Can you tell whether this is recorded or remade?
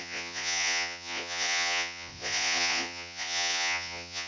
remade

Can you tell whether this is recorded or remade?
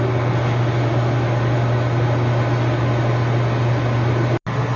recorded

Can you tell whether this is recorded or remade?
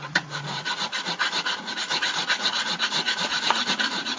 remade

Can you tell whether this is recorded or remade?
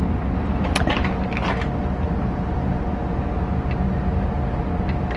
recorded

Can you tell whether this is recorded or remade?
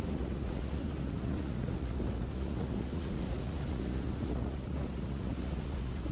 remade